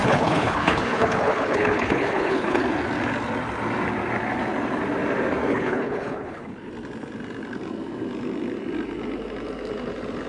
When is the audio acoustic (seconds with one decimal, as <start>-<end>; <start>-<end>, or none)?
2.6-5.5; 6.7-10.3